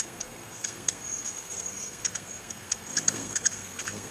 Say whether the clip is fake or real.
fake